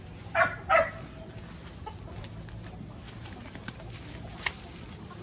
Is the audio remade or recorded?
recorded